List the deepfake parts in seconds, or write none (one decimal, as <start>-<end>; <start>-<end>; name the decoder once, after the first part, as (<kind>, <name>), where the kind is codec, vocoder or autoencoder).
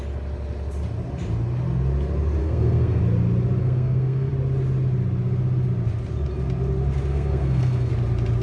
2.4-3.0 (codec, SNAC); 3.6-4.3; 7.1-7.9